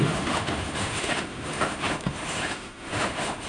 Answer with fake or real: fake